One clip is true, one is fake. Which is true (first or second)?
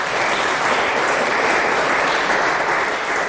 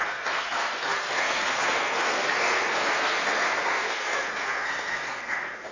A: first